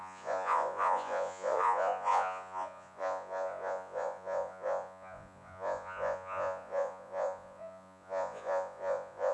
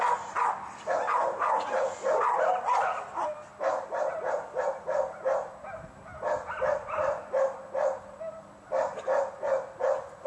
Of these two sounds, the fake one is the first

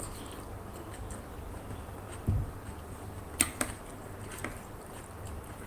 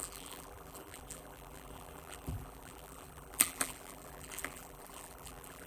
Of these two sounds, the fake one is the second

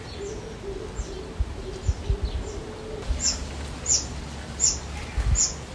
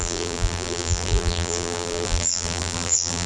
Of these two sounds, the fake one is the second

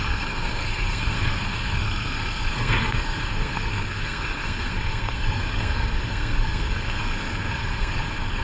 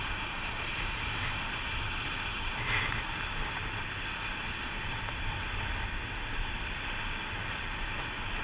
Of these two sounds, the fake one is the first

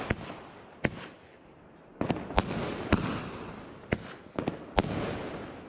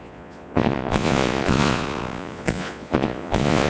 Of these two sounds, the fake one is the second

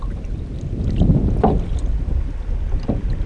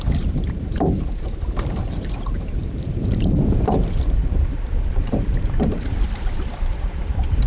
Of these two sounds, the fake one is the second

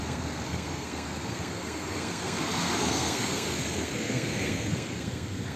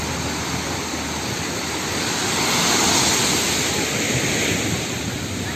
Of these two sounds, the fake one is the first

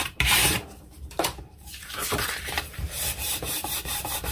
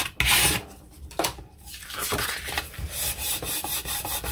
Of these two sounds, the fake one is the first